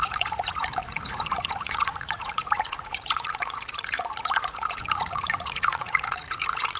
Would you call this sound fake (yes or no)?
yes